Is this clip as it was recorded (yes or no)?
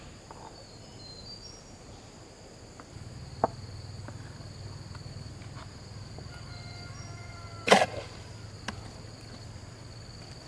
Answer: yes